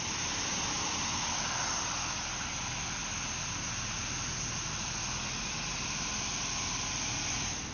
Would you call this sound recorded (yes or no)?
yes